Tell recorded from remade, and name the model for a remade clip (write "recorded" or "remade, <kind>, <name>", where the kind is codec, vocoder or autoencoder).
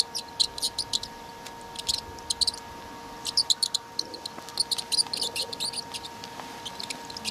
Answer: recorded